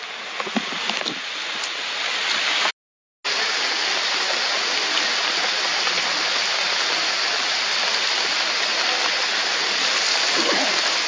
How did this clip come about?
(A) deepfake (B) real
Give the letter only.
B